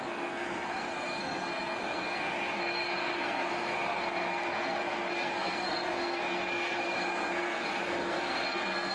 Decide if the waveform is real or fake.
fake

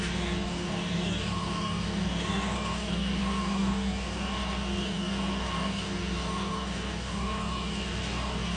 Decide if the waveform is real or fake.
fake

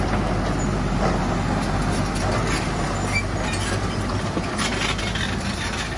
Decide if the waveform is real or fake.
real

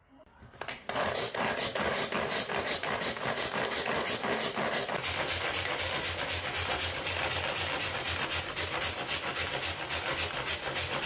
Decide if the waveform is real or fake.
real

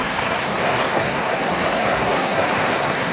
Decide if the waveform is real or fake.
fake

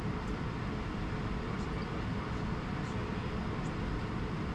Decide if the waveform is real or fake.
real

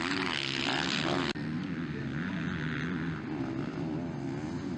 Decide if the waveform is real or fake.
real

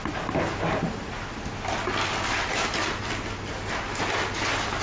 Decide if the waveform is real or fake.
real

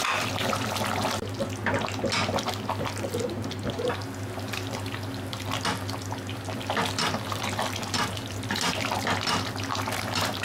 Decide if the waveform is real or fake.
real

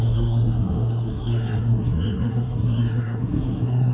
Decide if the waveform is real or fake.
fake